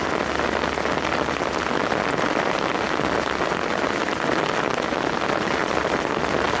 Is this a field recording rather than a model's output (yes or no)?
yes